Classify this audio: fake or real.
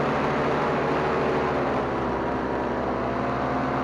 real